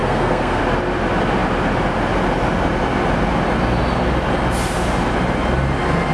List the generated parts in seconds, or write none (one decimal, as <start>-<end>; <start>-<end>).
0.0-0.6